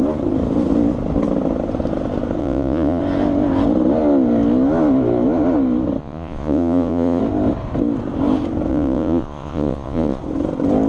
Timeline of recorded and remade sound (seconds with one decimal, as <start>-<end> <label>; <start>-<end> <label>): 0.0-2.4 recorded; 2.4-3.0 remade; 3.0-6.0 recorded; 6.0-7.2 remade; 7.2-8.7 recorded; 8.7-10.2 remade; 10.2-10.9 recorded